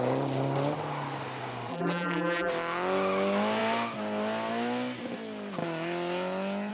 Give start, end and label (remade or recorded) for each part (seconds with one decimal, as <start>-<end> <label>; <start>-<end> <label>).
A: 0.0-1.7 recorded; 1.7-2.5 remade; 2.5-6.7 recorded